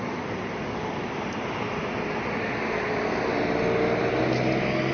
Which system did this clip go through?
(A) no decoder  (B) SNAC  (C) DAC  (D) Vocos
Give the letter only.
A